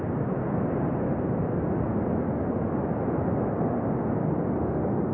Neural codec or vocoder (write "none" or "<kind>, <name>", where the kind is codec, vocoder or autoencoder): none